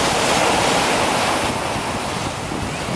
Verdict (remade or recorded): recorded